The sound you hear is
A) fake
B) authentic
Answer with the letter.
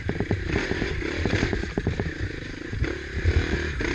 A